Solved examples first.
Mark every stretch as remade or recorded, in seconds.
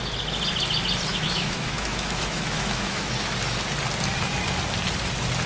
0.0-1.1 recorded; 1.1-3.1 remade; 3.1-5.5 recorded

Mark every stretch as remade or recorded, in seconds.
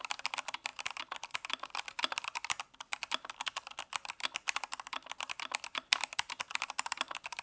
0.0-7.4 recorded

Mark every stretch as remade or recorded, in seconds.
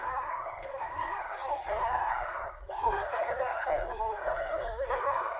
0.0-5.4 remade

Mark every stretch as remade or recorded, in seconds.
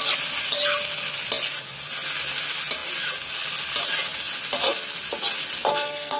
0.0-5.7 recorded; 5.7-6.2 remade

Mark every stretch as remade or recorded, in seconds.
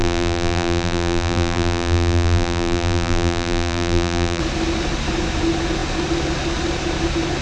0.0-4.4 remade; 4.4-7.4 recorded